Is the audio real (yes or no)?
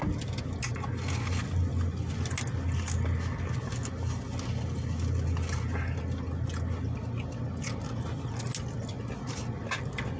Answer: yes